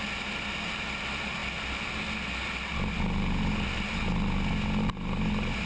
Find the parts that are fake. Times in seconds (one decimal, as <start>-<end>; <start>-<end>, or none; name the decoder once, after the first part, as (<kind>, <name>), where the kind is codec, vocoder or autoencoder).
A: none